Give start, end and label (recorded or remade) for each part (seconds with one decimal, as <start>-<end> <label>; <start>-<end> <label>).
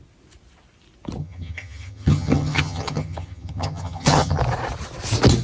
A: 0.0-1.2 recorded; 1.2-4.4 remade; 4.4-5.4 recorded